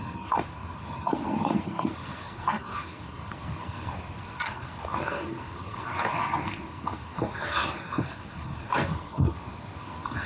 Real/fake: fake